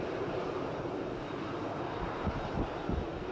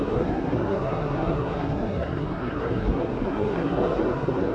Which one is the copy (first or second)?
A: second